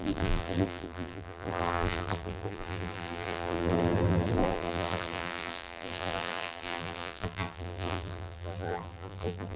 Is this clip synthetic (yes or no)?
yes